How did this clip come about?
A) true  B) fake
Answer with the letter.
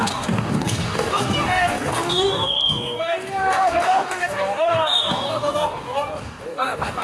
B